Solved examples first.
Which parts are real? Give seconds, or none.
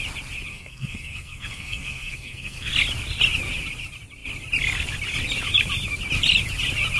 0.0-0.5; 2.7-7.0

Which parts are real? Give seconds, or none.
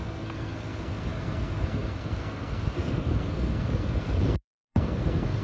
none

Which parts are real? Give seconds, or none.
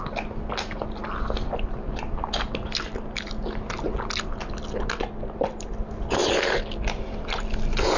0.0-8.0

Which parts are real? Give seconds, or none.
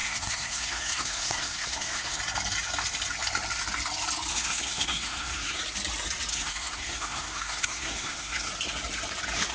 2.2-4.3; 5.6-6.3; 8.5-9.5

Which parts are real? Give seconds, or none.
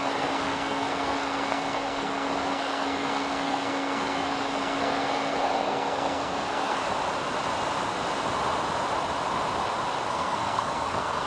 6.8-10.1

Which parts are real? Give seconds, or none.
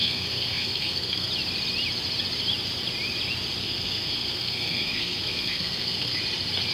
1.3-3.6; 6.2-6.7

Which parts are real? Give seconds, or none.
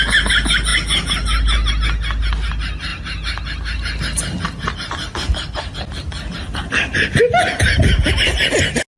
0.0-9.0